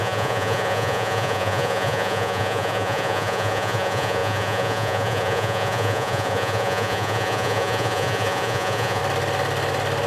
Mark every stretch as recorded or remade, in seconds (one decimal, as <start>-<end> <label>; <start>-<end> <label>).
0.0-9.0 remade; 9.0-10.1 recorded